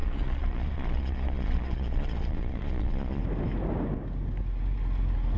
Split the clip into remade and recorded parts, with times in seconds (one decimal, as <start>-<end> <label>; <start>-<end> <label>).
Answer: 0.0-3.2 remade; 3.2-5.4 recorded